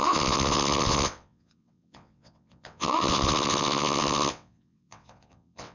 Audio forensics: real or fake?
fake